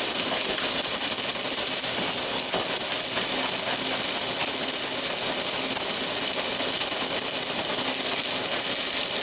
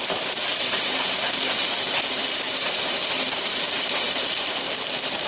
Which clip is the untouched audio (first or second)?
first